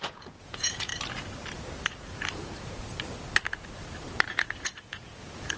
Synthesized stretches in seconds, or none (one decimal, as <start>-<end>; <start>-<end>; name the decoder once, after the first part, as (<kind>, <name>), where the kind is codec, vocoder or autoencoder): 0.0-0.9 (vocoder, Vocos); 4.3-5.6